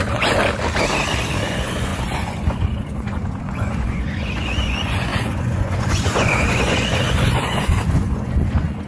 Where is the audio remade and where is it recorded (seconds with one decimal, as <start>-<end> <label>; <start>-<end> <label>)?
0.0-0.4 remade; 0.4-1.5 recorded; 1.5-8.9 remade